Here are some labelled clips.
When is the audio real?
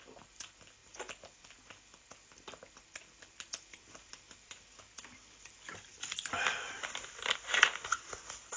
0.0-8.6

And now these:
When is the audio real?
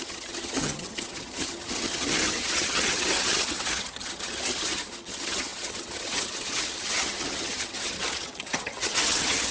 none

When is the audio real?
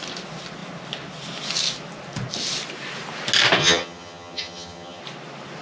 0.0-3.6; 5.0-5.6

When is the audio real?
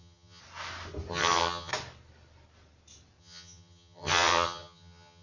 0.4-1.1; 1.7-3.2